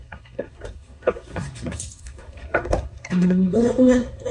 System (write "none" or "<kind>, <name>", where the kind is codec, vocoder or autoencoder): codec, SNAC